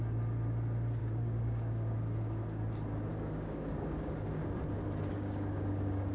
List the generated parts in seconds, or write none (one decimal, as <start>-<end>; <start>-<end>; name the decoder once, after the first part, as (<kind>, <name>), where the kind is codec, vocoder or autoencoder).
1.0-2.7 (codec, DAC); 3.1-4.4; 5.1-6.1